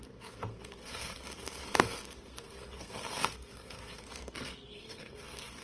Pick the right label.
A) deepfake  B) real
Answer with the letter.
A